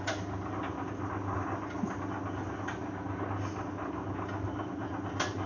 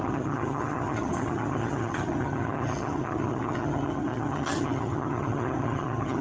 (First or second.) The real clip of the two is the first